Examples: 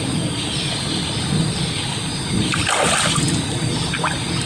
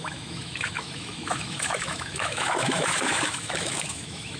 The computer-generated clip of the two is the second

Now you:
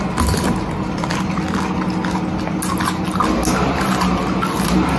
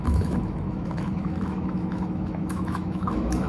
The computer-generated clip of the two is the second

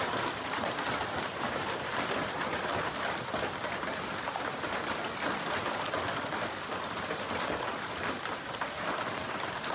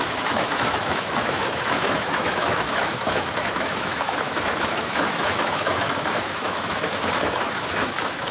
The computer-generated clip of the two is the second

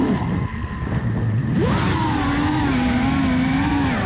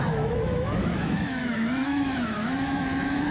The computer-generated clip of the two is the second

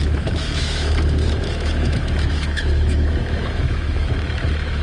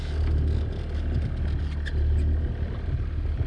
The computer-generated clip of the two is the first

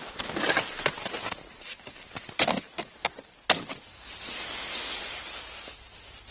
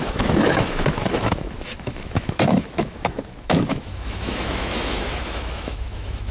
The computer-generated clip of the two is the second